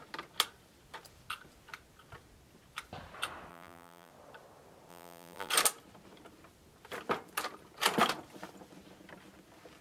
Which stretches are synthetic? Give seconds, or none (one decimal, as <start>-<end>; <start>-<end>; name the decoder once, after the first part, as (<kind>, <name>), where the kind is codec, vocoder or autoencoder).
3.5-4.1 (vocoder, BigVGAN v2); 4.9-5.5